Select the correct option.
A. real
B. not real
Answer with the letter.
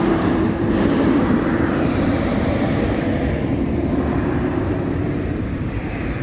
B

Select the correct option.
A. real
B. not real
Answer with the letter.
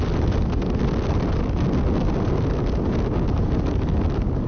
A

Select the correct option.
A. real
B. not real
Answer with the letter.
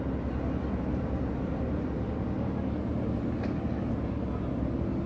A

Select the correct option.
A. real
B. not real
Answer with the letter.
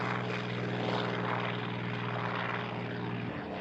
A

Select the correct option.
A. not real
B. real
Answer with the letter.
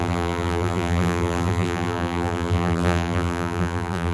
A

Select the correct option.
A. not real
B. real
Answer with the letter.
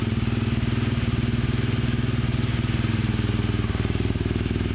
B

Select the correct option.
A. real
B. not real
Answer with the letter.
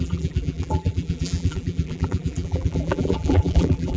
B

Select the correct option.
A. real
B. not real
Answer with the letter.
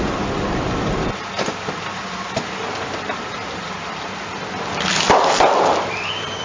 B